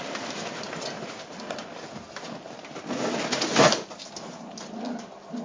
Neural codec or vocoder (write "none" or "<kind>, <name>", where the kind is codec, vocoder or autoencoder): none